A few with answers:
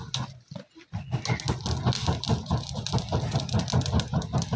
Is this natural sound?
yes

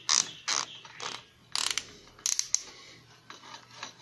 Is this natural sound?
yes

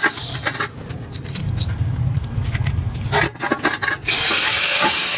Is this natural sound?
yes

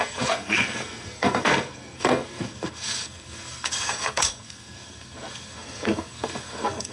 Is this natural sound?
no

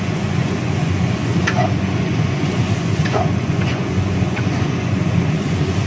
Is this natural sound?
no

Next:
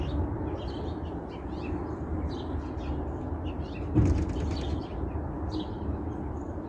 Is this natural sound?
yes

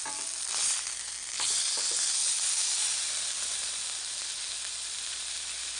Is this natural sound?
yes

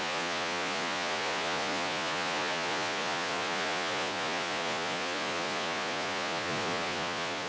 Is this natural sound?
no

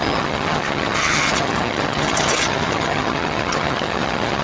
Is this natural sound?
no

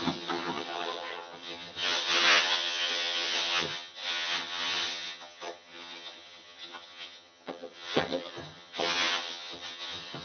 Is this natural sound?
no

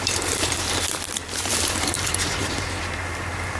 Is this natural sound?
no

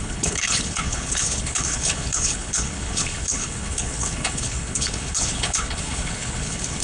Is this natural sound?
no